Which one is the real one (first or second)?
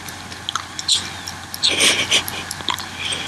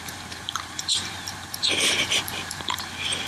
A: first